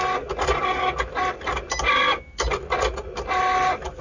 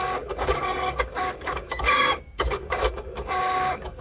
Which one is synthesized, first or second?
second